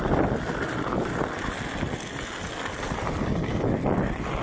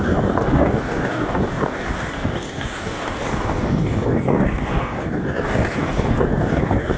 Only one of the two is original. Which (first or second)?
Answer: first